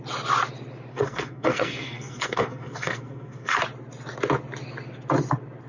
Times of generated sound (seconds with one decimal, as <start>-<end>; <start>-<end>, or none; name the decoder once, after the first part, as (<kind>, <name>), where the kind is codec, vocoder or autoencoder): 0.9-3.6 (codec, SNAC)